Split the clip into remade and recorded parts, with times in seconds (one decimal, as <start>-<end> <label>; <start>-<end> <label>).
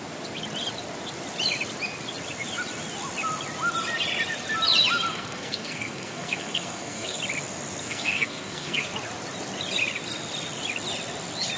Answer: 0.0-5.1 recorded; 5.1-7.2 remade; 7.2-7.8 recorded; 7.8-8.9 remade; 8.9-11.6 recorded